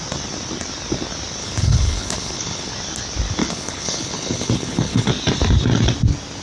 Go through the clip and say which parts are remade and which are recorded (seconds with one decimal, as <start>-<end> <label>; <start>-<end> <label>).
0.0-1.4 recorded; 1.4-2.7 remade; 2.7-3.4 recorded; 3.4-5.1 remade; 5.1-6.4 recorded